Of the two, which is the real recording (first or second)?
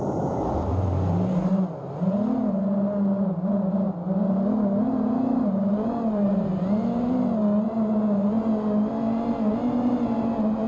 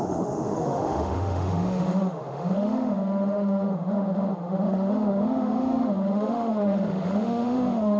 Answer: first